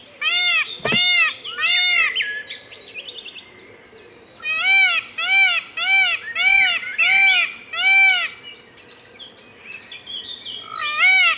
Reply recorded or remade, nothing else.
recorded